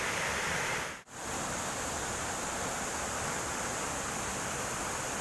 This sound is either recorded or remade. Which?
recorded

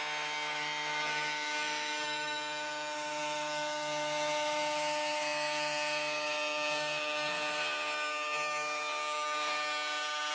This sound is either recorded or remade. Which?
remade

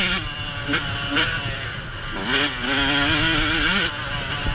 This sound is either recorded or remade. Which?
recorded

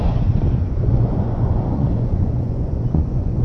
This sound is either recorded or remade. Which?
remade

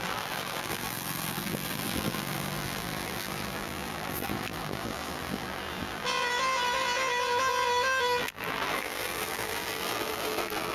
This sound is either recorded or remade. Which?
remade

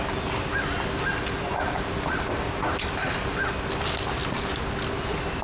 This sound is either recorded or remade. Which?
recorded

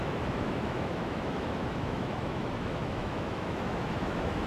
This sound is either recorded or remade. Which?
remade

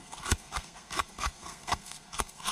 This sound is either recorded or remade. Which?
remade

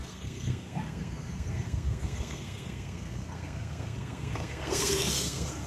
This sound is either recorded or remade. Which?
remade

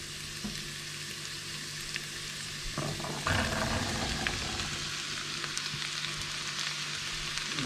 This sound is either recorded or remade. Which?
recorded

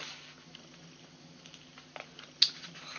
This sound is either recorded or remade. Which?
recorded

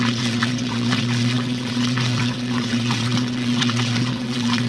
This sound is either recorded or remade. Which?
remade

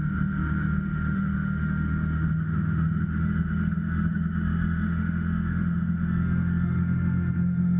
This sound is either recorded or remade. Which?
remade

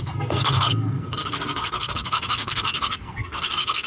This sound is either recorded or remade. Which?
remade